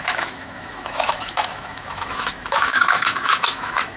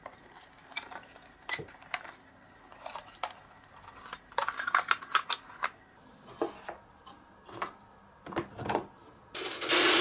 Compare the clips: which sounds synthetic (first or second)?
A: first